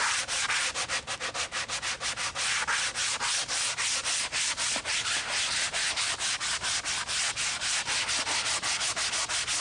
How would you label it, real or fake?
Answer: real